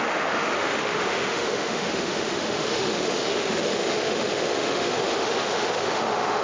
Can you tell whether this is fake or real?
fake